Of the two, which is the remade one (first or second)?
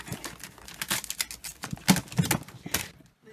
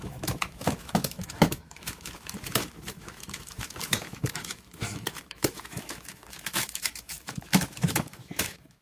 second